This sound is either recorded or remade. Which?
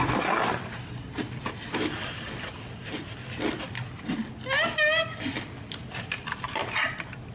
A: recorded